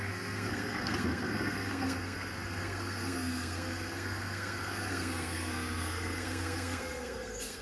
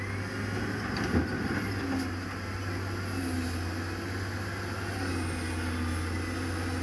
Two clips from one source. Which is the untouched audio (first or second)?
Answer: second